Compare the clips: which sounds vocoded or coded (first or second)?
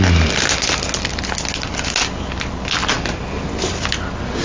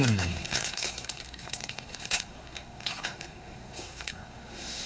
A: second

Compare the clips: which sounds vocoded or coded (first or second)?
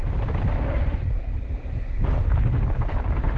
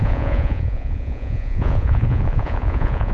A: second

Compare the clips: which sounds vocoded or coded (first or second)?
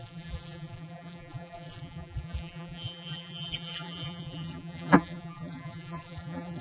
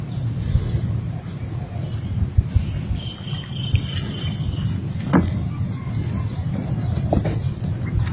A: first